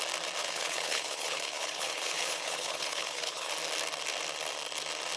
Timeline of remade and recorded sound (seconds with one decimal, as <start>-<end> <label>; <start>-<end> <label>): 0.0-0.4 recorded; 0.4-3.5 remade; 3.5-5.2 recorded